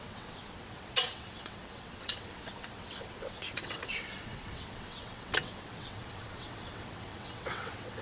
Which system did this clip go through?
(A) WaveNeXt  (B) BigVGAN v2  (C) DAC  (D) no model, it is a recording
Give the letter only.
A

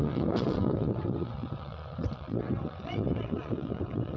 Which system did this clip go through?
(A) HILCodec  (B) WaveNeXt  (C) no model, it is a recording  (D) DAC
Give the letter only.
B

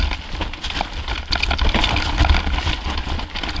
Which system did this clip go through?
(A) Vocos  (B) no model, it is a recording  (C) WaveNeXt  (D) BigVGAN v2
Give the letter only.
B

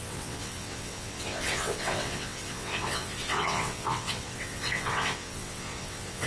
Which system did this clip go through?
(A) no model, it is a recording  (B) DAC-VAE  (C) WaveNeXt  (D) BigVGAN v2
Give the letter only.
C